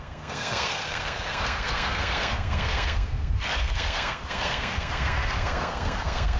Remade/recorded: remade